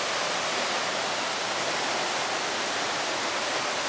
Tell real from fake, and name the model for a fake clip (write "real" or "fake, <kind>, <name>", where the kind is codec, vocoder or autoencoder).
real